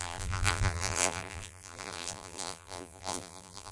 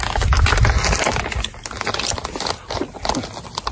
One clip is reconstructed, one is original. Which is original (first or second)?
second